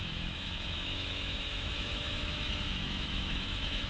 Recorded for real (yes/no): no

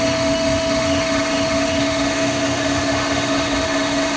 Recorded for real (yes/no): no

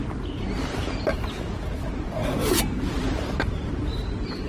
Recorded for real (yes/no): yes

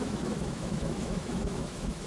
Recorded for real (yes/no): no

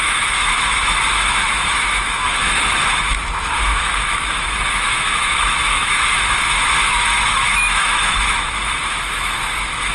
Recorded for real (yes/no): no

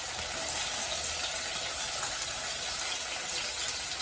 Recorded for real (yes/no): yes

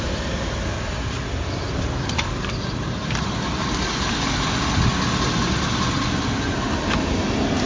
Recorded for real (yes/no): yes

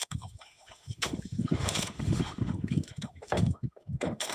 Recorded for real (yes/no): no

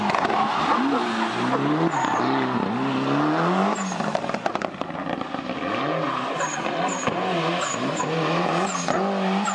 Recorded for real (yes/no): yes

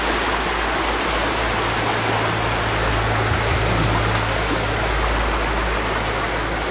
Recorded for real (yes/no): yes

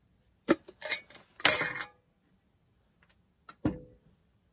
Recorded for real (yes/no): yes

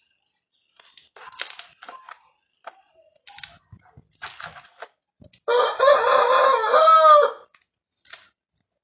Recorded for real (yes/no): yes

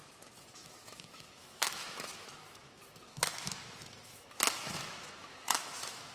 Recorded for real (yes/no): no